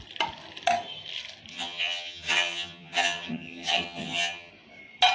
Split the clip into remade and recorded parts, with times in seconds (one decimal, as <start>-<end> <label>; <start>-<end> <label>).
0.0-1.5 recorded; 1.5-4.5 remade; 4.5-5.1 recorded